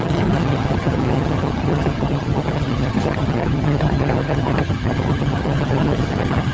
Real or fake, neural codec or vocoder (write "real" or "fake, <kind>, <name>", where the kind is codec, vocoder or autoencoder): fake, vocoder, HiFi-GAN